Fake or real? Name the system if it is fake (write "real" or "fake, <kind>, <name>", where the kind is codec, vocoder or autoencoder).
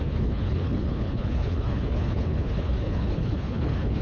fake, codec, HILCodec